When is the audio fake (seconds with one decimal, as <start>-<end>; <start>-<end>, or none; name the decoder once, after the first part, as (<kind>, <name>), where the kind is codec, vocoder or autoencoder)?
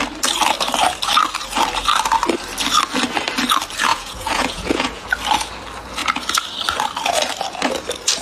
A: 3.9-5.1 (vocoder, Vocos)